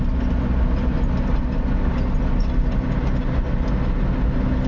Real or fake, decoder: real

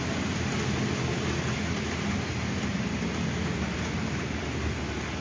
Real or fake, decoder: real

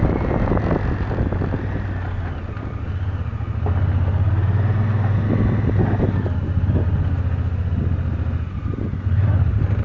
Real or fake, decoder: real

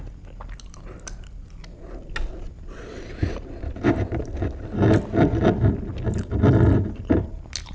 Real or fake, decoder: real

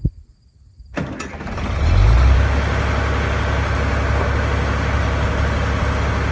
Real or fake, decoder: real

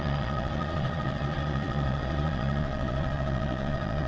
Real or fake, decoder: fake, vocoder, Vocos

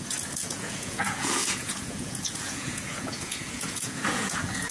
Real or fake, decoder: fake, vocoder, Vocos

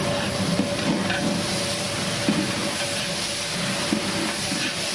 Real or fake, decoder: real